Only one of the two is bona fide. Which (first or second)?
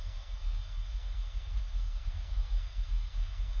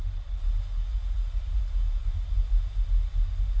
second